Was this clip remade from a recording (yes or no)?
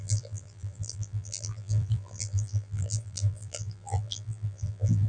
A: yes